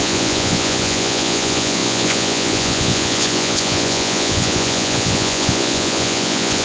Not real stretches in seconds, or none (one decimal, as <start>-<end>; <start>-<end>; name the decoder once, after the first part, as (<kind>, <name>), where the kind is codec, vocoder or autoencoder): 0.0-6.6 (vocoder, Vocos)